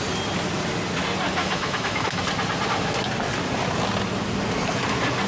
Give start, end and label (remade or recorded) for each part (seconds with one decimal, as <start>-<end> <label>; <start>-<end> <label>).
0.0-1.4 recorded; 1.4-2.2 remade; 2.2-5.3 recorded